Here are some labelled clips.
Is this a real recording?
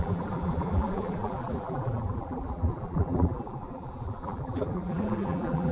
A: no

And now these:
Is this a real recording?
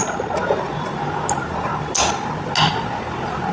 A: yes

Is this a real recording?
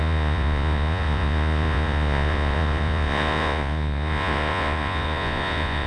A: no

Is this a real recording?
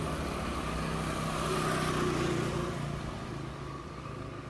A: yes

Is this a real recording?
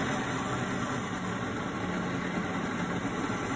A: yes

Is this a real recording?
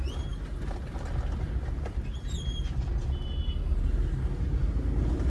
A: yes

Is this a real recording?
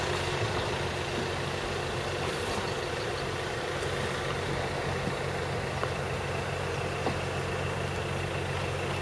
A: yes